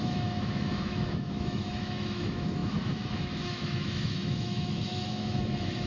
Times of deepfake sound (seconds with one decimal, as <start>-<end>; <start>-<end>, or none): 0.0-5.9